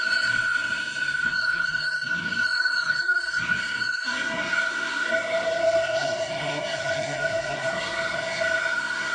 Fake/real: fake